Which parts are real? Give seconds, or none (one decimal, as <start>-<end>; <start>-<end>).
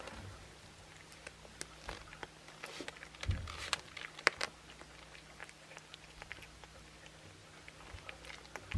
0.0-8.8